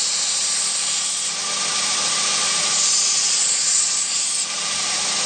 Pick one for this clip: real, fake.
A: real